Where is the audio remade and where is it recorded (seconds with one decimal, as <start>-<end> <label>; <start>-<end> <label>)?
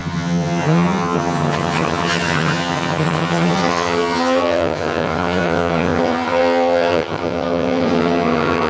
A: 0.0-8.7 remade